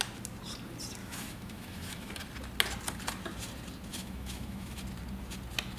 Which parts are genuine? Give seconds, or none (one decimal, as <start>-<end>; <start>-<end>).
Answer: 0.0-1.0; 2.1-3.9; 4.8-5.8